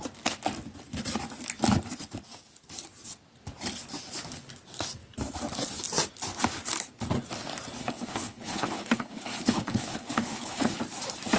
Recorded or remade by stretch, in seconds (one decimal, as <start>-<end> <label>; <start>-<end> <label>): 0.0-7.8 recorded; 7.8-10.8 remade; 10.8-11.4 recorded